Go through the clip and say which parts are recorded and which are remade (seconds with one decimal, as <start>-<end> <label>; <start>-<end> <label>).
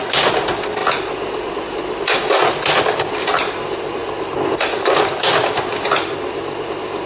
0.0-7.1 recorded